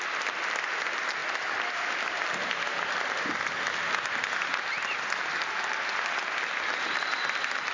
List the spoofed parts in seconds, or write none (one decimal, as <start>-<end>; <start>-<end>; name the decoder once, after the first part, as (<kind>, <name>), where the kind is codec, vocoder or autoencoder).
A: none